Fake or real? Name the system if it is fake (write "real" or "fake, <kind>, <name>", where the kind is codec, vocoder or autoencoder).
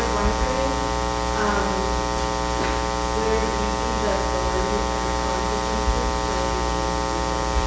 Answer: real